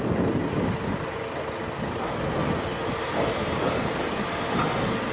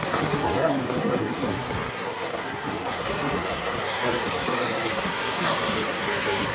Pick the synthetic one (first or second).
second